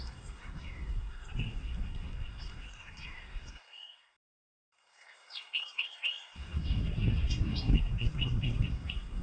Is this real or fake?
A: fake